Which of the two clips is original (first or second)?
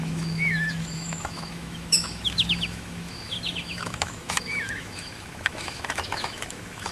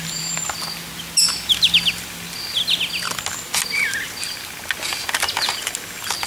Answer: second